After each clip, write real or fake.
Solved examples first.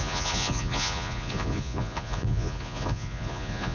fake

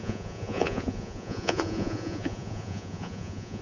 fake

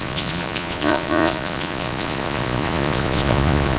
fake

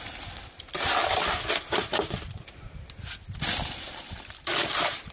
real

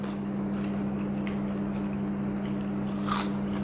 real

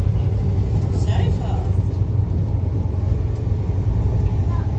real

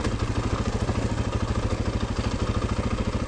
real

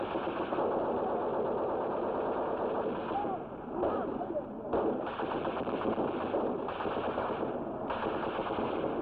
real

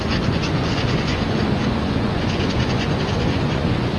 fake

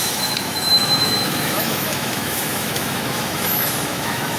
fake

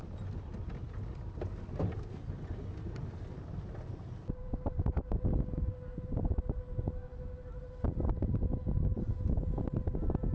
real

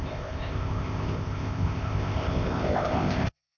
fake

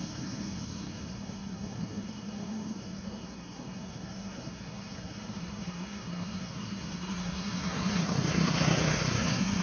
fake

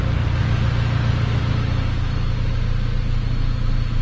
real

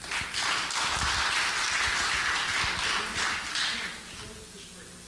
real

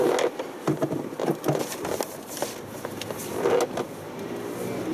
real